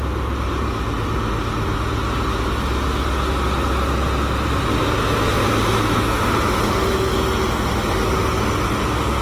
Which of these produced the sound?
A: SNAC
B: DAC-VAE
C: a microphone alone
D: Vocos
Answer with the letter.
C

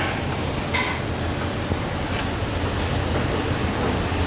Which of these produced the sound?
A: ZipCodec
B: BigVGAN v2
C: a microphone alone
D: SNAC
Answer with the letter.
C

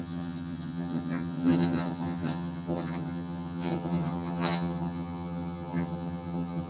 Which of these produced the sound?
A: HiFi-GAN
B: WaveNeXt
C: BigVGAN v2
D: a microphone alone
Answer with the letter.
A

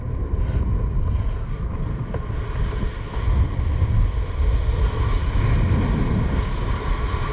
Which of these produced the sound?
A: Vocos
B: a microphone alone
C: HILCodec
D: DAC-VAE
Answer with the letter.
B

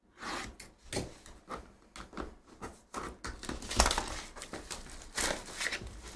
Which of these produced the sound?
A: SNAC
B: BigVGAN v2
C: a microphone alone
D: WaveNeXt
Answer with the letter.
C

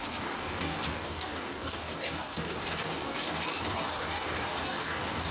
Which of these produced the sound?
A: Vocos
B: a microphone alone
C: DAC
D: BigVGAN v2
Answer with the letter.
C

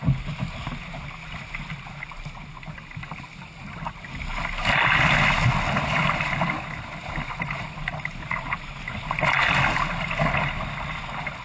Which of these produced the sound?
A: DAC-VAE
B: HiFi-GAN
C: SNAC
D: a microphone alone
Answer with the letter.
D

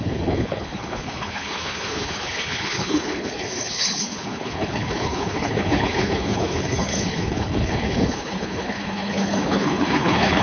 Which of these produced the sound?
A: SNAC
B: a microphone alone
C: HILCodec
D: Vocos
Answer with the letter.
C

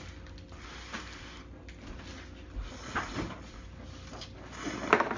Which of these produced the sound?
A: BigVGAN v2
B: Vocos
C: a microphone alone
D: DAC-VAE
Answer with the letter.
C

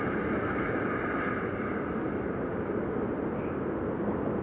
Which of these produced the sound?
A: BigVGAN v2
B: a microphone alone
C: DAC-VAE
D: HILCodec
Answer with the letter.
B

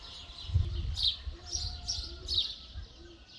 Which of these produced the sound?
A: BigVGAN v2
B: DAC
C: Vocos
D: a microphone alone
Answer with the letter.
D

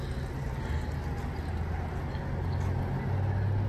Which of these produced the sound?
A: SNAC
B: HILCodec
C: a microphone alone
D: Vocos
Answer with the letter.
C